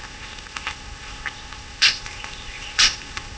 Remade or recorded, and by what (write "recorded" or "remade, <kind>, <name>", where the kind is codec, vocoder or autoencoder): remade, codec, ZipCodec